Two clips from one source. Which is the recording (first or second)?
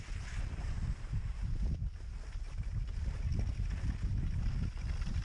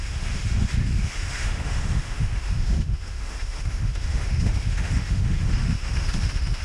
first